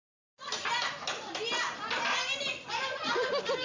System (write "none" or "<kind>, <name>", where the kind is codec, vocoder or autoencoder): none